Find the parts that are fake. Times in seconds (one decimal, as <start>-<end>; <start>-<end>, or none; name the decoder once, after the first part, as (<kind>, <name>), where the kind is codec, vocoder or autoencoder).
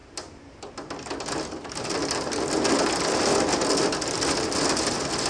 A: none